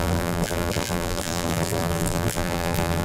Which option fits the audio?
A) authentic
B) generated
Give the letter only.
B